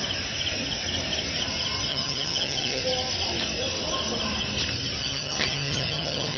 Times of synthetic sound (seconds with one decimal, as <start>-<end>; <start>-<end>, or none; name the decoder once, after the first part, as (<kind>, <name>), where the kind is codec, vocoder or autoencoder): 1.9-2.8 (vocoder, HiFi-GAN); 5.0-6.4